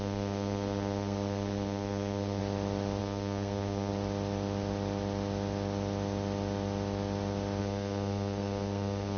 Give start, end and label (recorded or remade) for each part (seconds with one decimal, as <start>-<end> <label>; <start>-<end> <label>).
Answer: 0.0-2.4 remade; 2.4-3.0 recorded; 3.0-3.9 remade; 3.9-7.6 recorded; 7.6-9.2 remade